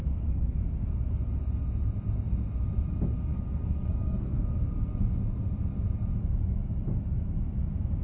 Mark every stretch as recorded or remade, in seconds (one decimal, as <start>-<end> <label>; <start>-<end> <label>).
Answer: 0.0-0.6 remade; 0.6-3.3 recorded; 3.3-5.0 remade; 5.0-8.0 recorded